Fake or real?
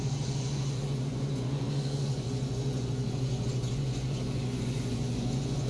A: fake